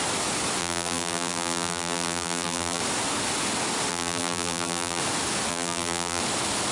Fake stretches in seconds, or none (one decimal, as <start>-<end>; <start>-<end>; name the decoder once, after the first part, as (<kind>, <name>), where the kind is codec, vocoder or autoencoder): 0.6-2.8 (vocoder, BigVGAN v2); 3.9-5.0; 5.5-6.2